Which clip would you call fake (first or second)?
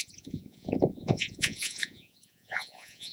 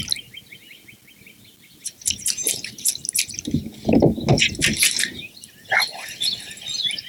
first